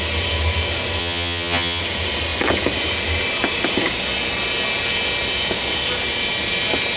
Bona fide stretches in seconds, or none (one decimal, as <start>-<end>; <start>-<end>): 0.0-1.0; 1.8-7.0